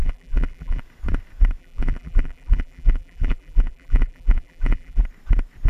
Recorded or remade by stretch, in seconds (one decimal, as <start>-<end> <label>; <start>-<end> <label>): 0.0-0.8 remade; 0.8-1.6 recorded; 1.6-5.0 remade; 5.0-5.7 recorded